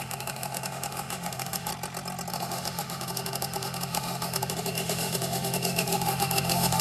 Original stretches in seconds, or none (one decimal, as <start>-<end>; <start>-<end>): 1.7-2.3